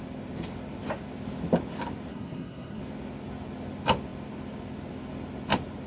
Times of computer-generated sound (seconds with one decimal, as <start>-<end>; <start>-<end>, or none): 2.1-2.8